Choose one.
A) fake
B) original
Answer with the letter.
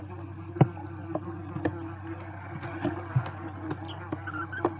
B